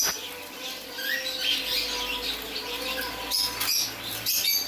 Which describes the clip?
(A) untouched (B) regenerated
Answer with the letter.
A